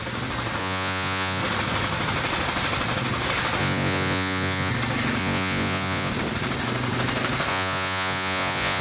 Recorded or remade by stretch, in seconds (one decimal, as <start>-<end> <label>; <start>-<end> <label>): 0.0-0.6 recorded; 0.6-1.4 remade; 1.4-3.6 recorded; 3.6-4.7 remade; 4.7-5.2 recorded; 5.2-6.1 remade; 6.1-7.5 recorded; 7.5-8.8 remade